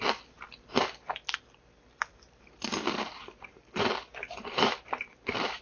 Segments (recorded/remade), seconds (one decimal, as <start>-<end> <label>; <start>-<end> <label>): 0.0-2.1 recorded; 2.1-5.6 remade